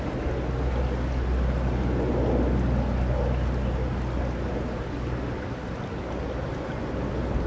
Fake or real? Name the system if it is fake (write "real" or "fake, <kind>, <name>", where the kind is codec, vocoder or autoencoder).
real